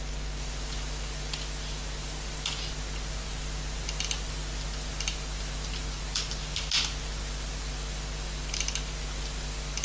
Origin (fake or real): real